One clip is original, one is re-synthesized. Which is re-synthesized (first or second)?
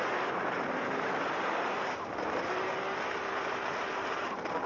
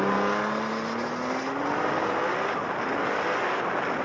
first